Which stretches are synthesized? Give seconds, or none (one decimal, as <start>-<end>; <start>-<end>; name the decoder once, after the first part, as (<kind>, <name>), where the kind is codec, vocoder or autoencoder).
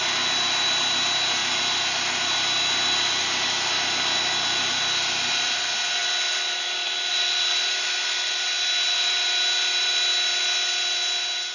none